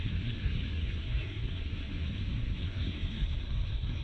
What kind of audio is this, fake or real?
fake